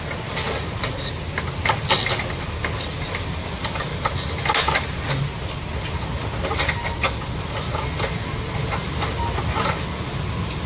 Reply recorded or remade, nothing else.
recorded